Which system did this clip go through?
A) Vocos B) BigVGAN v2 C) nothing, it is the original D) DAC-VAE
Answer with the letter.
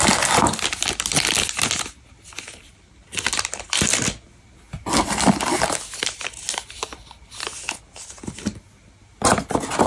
C